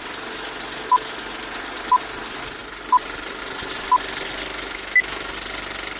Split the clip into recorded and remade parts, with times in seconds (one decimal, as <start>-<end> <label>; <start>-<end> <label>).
0.0-4.5 recorded; 4.5-5.3 remade; 5.3-6.0 recorded